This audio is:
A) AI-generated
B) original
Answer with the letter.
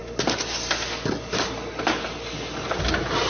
B